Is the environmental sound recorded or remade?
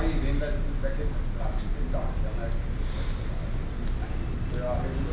recorded